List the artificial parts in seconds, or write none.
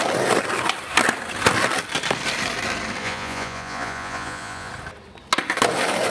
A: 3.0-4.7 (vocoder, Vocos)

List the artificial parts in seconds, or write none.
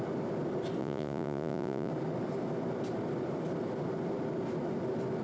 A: 0.8-1.9 (vocoder, Vocos)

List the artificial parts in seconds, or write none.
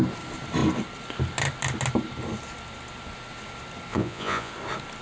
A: 3.9-4.5 (vocoder, Vocos)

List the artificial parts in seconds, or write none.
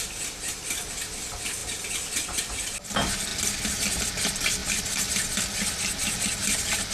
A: 3.3-4.0 (vocoder, BigVGAN v2); 4.6-5.1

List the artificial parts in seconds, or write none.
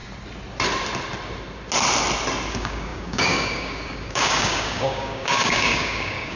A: 2.5-6.4 (codec, DAC)